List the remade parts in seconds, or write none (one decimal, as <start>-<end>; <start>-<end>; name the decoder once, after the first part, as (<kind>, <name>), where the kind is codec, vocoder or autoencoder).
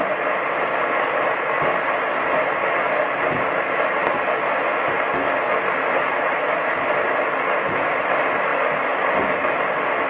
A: none